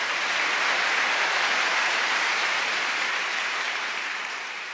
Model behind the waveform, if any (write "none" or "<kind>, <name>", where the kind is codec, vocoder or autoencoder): vocoder, BigVGAN v2